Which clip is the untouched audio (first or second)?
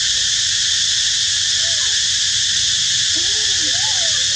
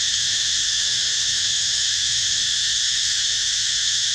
first